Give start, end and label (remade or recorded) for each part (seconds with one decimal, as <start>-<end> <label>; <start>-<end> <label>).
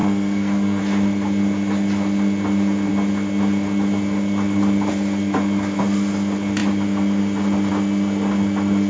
0.0-0.8 remade; 0.8-8.9 recorded